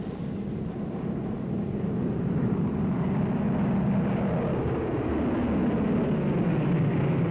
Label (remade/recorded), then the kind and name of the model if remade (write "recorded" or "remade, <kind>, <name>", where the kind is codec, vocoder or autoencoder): recorded